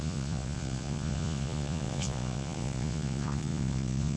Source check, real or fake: fake